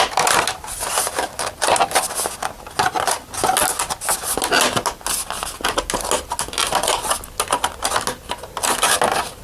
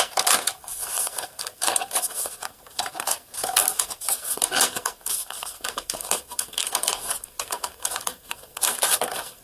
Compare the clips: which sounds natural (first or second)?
first